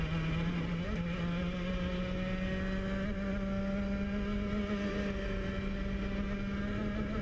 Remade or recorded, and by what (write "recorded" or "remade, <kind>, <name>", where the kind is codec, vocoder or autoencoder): recorded